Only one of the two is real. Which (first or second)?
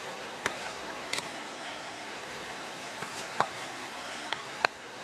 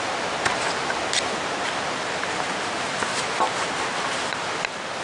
second